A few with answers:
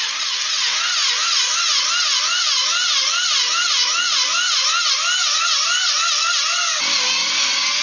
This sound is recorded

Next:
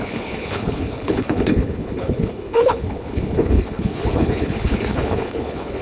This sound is remade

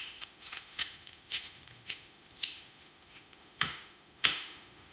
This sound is remade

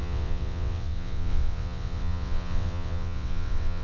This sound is remade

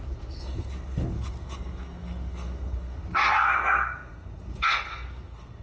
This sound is remade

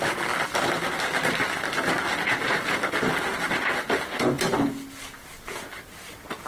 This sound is recorded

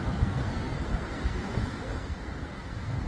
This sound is remade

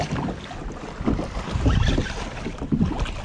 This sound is recorded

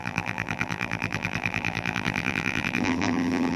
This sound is remade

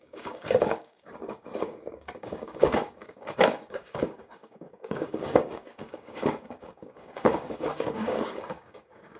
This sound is remade